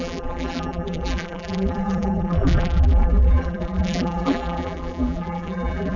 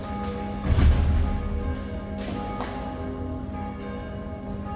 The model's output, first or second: first